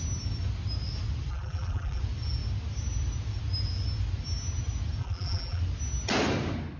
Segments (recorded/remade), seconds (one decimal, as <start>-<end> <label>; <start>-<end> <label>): 0.0-1.3 recorded; 1.3-2.0 remade; 2.0-5.0 recorded; 5.0-5.6 remade; 5.6-6.8 recorded

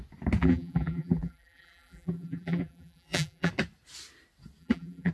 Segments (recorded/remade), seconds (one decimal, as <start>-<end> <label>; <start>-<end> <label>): 0.0-0.4 recorded; 0.4-3.5 remade; 3.5-4.6 recorded; 4.6-5.1 remade

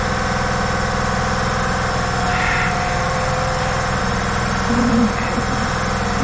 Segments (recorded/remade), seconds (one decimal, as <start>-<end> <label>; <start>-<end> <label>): 0.0-2.3 recorded; 2.3-4.0 remade; 4.0-6.2 recorded